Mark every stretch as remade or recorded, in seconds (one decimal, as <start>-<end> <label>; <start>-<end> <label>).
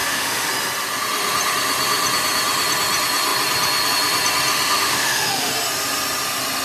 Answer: 0.0-0.5 remade; 0.5-4.5 recorded; 4.5-5.5 remade; 5.5-6.6 recorded